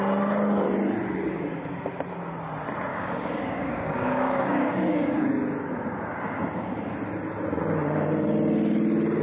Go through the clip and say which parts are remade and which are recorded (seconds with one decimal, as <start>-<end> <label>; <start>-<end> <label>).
0.0-2.9 recorded; 2.9-5.3 remade; 5.3-9.2 recorded